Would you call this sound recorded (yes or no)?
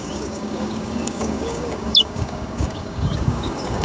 no